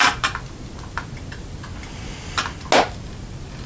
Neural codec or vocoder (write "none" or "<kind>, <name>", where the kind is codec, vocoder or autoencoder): none